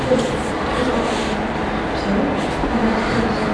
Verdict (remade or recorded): recorded